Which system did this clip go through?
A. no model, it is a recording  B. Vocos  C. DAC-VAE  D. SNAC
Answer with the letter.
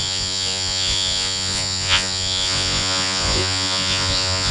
B